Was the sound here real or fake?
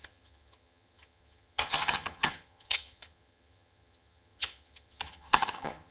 fake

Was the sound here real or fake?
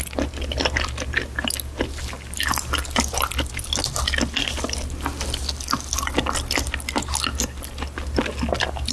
real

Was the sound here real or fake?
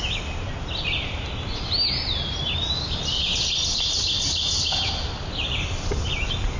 real